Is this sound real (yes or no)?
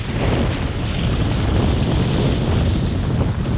yes